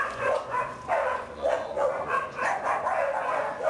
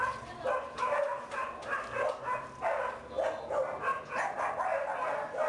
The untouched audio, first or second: second